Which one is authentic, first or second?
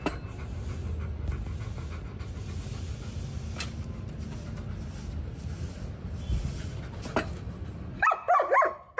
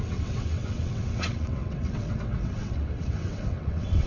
first